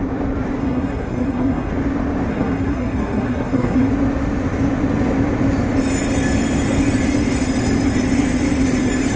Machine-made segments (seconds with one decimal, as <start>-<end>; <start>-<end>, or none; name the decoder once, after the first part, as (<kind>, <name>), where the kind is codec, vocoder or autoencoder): 0.6-1.7 (codec, SNAC); 2.3-3.9